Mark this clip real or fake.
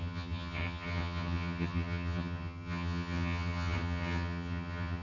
fake